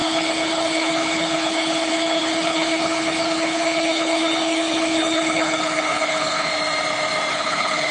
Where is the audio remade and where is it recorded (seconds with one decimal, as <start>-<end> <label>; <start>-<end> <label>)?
0.0-6.5 remade; 6.5-7.3 recorded; 7.3-7.9 remade